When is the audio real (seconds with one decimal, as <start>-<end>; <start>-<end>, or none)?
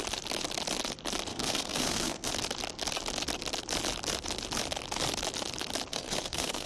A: 0.0-1.3; 2.3-5.9